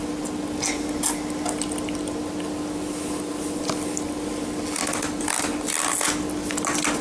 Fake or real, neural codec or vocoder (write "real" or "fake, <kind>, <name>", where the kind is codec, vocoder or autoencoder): real